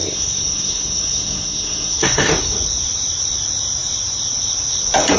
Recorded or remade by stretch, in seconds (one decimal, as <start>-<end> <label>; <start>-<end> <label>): 0.0-2.3 remade; 2.3-5.2 recorded